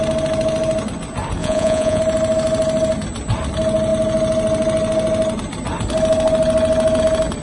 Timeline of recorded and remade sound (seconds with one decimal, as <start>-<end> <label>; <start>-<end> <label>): 0.0-1.4 recorded; 1.4-2.0 remade; 2.0-7.4 recorded